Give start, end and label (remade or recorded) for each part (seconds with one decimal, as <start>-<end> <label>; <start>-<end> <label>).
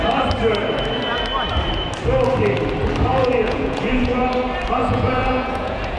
0.0-3.1 recorded; 3.1-4.2 remade; 4.2-4.8 recorded; 4.8-6.0 remade